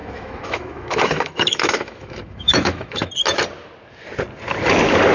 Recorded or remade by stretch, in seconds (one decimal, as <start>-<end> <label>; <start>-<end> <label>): 0.0-3.1 remade; 3.1-5.1 recorded